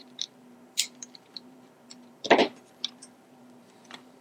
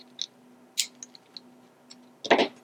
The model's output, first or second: first